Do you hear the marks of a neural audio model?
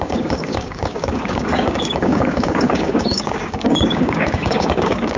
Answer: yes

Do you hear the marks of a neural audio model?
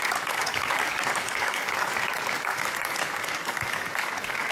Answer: yes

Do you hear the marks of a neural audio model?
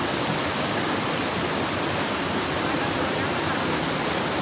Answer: no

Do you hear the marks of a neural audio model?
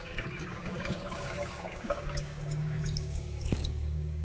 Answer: yes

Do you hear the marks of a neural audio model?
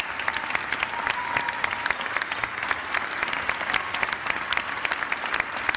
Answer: no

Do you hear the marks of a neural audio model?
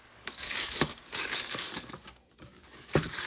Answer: yes